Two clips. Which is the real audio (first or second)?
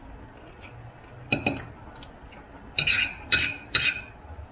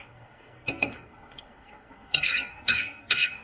first